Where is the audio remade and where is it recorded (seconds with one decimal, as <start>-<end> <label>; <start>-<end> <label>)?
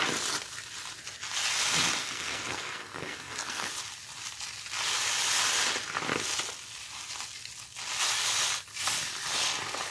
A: 0.0-2.0 recorded; 2.0-3.7 remade; 3.7-9.9 recorded